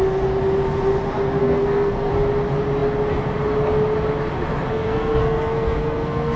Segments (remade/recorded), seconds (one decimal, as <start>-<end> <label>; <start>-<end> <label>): 0.0-1.4 recorded; 1.4-2.1 remade; 2.1-4.7 recorded; 4.7-6.4 remade